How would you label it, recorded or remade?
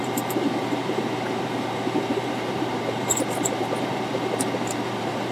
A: remade